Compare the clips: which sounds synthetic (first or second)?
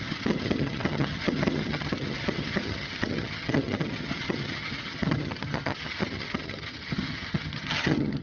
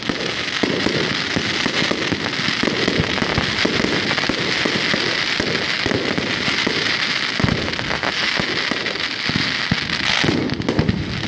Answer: first